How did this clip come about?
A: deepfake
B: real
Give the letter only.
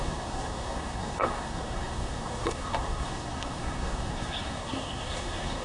A